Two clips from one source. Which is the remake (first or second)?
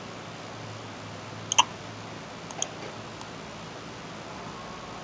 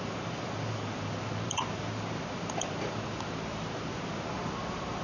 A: second